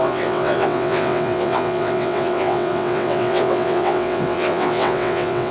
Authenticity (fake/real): fake